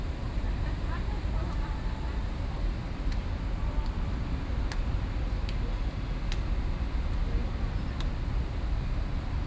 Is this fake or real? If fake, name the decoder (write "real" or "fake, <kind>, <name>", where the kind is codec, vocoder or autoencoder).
real